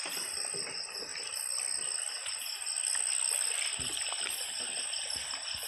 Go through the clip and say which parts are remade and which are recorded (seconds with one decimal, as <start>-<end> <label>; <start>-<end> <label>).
0.0-5.7 recorded